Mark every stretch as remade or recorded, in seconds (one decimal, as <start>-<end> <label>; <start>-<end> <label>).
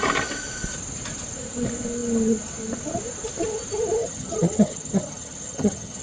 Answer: 0.0-4.0 recorded; 4.0-6.0 remade